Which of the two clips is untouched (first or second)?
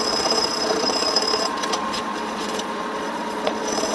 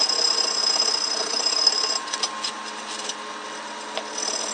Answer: second